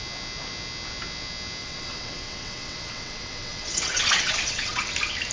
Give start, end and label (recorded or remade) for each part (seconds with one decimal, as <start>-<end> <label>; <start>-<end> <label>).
0.0-1.6 recorded; 1.6-4.8 remade; 4.8-5.3 recorded